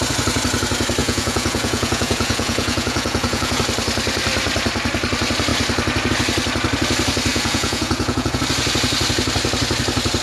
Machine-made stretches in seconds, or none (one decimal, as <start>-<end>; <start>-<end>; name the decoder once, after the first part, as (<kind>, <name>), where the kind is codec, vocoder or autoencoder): 1.0-3.6 (vocoder, Vocos); 7.3-8.4

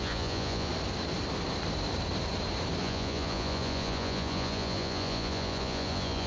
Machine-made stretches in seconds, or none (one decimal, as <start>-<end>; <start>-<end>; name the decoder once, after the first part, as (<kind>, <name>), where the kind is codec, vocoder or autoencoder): 0.0-0.7 (vocoder, Vocos); 2.8-6.3